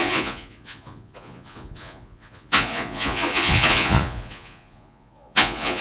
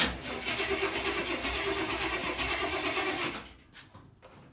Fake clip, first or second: first